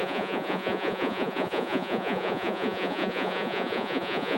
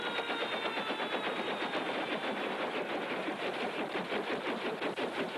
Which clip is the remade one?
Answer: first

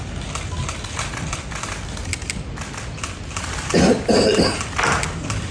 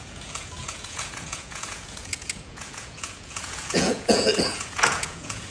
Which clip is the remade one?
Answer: second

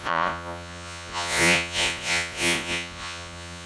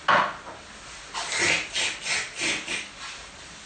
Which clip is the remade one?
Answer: first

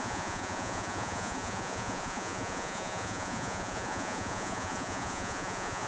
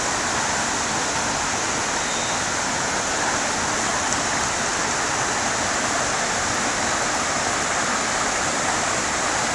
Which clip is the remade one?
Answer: first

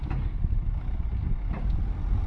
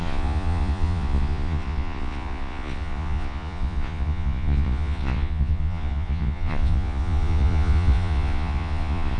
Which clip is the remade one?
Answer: second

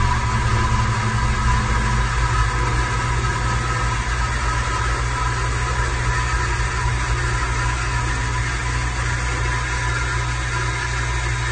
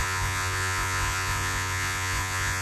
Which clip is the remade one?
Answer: second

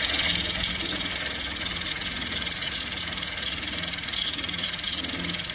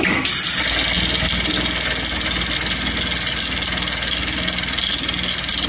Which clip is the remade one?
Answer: first